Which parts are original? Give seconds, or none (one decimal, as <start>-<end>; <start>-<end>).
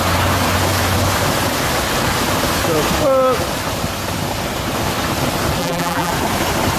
0.0-5.6; 6.1-6.8